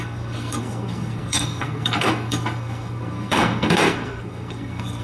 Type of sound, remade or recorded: remade